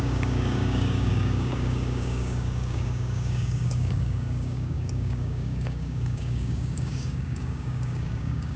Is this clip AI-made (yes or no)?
yes